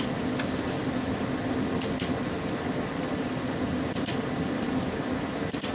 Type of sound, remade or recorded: recorded